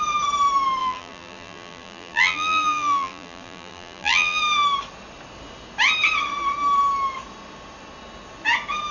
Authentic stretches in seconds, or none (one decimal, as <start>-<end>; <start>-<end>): 0.0-0.8; 4.4-8.9